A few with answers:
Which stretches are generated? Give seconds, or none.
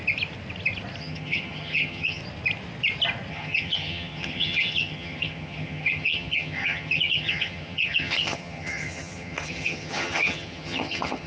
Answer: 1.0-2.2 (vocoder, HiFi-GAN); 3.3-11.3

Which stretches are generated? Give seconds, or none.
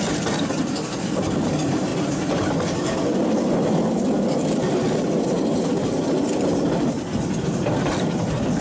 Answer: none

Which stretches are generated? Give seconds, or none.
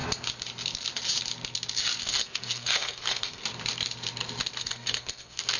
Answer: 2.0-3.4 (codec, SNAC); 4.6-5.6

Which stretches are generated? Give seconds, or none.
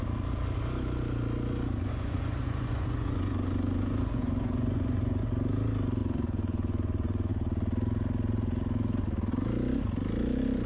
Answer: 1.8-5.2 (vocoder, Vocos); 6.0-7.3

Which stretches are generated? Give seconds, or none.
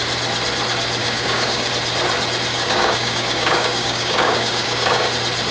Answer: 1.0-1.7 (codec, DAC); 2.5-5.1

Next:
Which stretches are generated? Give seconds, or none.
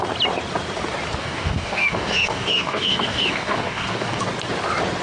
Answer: 1.2-4.2 (codec, DAC)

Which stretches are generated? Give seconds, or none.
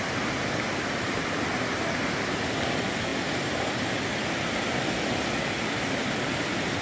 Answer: none